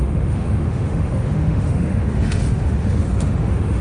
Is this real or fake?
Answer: fake